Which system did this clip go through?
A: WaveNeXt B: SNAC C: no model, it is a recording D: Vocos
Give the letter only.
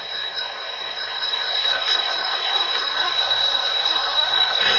B